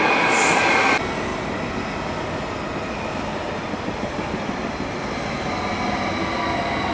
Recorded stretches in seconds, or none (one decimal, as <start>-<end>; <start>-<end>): 0.0-6.9